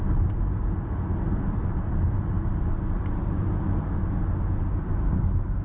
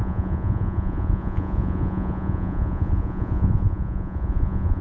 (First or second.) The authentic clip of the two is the first